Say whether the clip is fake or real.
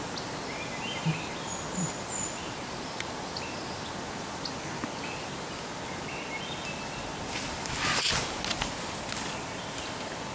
real